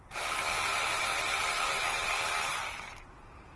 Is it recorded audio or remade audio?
remade